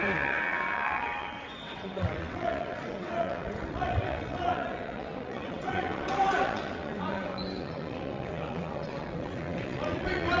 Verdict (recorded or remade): remade